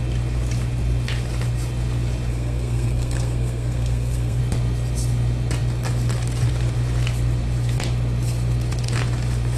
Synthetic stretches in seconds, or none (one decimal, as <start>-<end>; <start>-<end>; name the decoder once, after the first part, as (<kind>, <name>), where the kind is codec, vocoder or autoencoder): 2.3-4.4 (codec, SNAC)